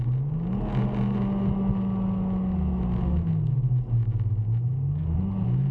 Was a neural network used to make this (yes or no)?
no